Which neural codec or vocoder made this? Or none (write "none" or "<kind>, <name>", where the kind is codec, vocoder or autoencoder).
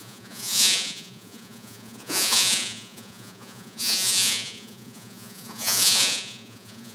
vocoder, Vocos